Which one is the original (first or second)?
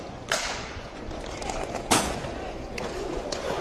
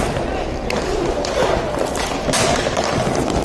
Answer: second